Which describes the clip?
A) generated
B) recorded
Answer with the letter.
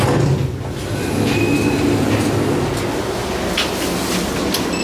B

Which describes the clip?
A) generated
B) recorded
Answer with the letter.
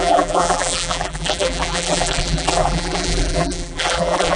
A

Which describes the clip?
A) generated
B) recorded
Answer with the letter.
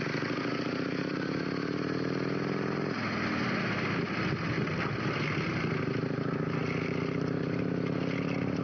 B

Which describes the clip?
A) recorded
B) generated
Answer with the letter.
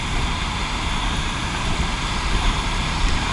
B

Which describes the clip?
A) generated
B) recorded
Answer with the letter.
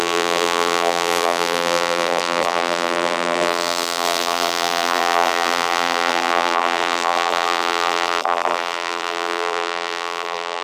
A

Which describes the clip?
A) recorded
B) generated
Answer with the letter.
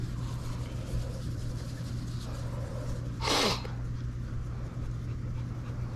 A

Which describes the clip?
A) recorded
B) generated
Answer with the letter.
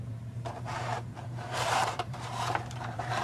B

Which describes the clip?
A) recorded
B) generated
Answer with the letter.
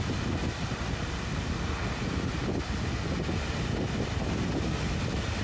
A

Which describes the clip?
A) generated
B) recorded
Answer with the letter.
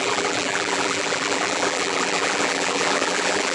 A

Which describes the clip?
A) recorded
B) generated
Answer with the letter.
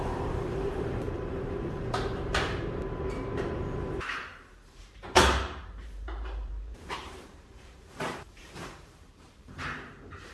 B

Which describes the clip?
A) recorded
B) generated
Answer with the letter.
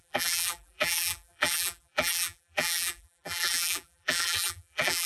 B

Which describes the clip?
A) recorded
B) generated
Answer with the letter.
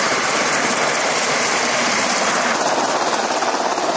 B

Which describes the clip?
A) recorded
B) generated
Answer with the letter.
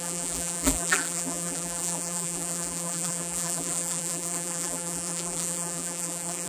B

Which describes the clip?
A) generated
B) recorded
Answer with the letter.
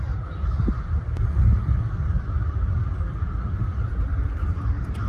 B